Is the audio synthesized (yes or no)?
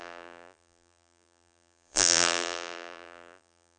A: yes